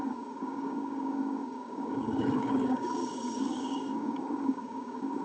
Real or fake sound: fake